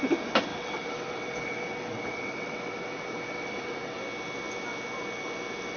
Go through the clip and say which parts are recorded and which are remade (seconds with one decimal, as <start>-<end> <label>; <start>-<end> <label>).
0.0-0.5 recorded; 0.5-4.0 remade; 4.0-5.8 recorded